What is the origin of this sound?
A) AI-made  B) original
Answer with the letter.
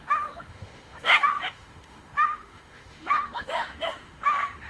A